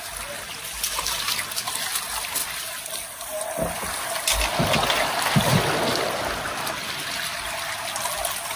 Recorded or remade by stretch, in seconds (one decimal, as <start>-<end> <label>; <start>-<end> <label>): 0.0-8.6 recorded